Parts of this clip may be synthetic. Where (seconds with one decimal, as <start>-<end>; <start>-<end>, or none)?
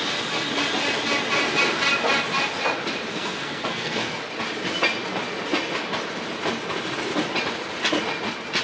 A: 3.1-4.1